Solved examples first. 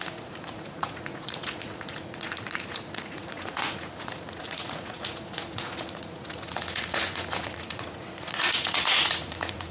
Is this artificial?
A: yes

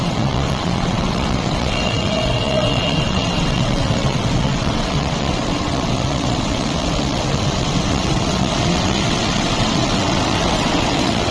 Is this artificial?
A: yes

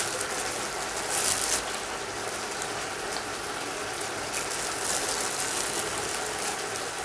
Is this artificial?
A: no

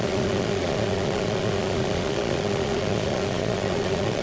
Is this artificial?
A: yes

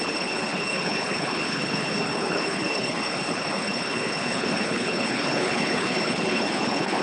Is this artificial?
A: yes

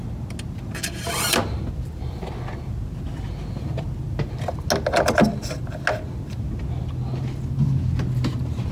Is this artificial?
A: no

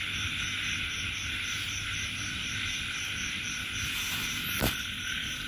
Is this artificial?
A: no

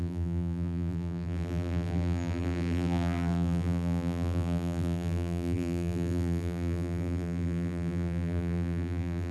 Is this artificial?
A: yes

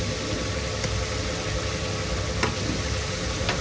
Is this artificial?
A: no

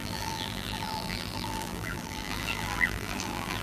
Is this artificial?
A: yes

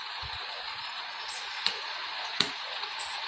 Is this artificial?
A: yes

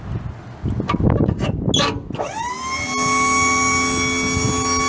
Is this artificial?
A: no